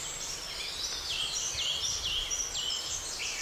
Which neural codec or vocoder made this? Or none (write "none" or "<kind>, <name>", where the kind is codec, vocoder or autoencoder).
vocoder, BigVGAN v2